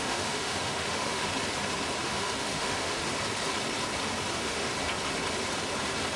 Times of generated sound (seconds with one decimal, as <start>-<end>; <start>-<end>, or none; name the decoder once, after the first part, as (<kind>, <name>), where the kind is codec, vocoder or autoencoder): 0.0-1.3 (autoencoder, DAC-VAE); 2.0-3.0; 4.3-4.7